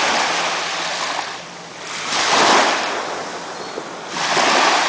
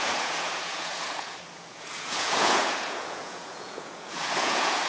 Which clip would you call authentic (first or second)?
first